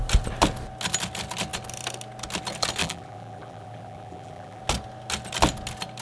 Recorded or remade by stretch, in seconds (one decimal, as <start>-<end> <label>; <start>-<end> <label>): 0.0-2.8 recorded; 2.8-4.6 remade; 4.6-6.0 recorded